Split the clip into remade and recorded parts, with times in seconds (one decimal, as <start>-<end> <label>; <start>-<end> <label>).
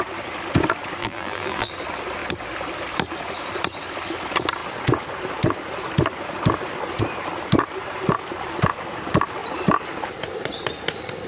0.0-1.0 recorded; 1.0-1.7 remade; 1.7-11.3 recorded